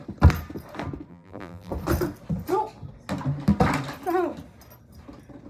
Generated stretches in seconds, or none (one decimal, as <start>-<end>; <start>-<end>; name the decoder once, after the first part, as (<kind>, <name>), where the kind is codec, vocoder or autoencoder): 1.1-1.7 (vocoder, BigVGAN v2)